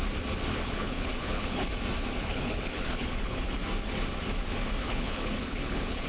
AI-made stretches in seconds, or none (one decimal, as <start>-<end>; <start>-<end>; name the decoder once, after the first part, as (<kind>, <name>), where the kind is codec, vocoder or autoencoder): 0.5-1.7 (codec, HILCodec); 2.2-3.4; 4.8-6.1